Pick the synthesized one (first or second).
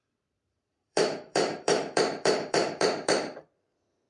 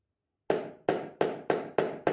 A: first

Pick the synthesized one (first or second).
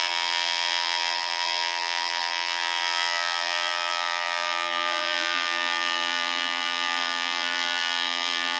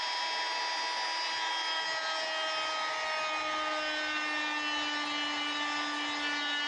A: first